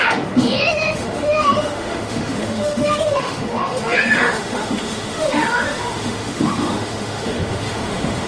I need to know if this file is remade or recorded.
remade